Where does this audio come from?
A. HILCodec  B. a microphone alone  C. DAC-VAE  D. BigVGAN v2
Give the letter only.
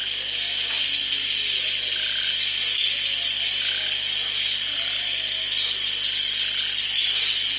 B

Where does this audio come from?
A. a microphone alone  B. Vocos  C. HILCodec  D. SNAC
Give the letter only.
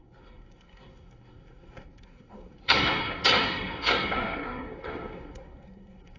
D